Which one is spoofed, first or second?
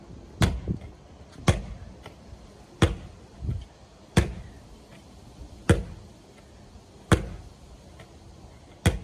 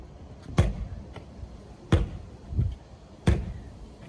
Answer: second